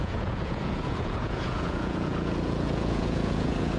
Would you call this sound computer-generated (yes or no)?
yes